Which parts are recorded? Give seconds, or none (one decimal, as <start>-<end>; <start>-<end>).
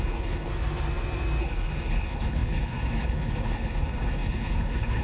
0.5-1.4